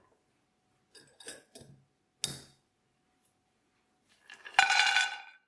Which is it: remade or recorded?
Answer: recorded